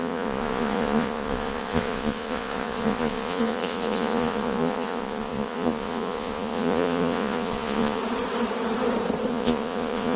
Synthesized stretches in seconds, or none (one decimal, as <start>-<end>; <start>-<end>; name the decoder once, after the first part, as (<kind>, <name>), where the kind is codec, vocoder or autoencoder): 0.0-8.0 (vocoder, Vocos); 9.3-10.2